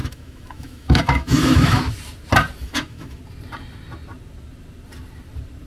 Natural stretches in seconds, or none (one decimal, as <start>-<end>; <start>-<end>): 1.8-2.6; 3.2-5.7